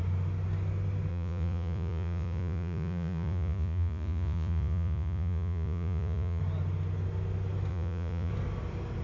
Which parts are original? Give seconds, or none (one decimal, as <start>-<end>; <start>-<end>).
0.0-1.1; 6.4-7.7; 8.3-9.0